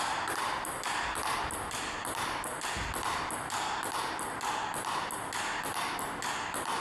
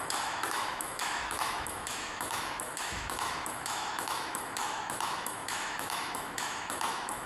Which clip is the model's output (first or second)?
second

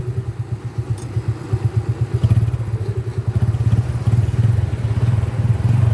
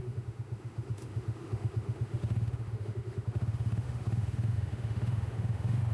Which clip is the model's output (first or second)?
second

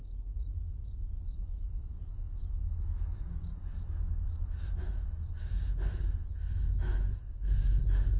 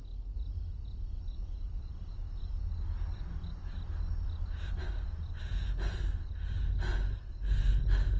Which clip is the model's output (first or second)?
first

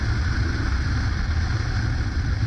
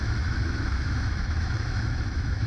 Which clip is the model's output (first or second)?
second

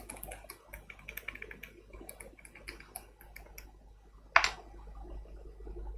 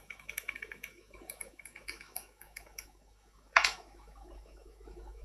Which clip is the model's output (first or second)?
second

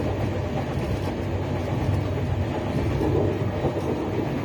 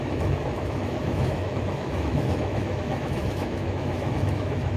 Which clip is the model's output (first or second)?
second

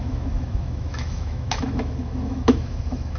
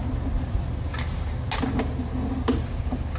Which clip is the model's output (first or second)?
first